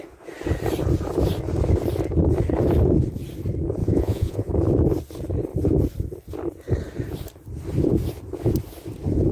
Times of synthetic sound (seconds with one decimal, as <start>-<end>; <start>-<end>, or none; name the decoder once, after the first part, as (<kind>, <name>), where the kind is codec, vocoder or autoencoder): 3.8-4.5 (vocoder, Vocos)